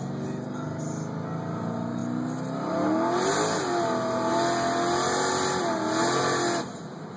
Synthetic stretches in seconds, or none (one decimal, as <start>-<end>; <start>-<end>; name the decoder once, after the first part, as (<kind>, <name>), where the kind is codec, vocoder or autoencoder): none